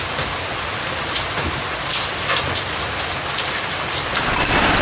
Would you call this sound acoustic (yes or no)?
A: no